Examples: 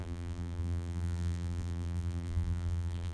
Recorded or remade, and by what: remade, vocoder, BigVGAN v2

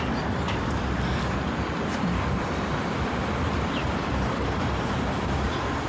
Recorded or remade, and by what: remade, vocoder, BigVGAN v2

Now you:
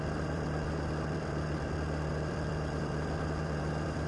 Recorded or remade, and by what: remade, vocoder, BigVGAN v2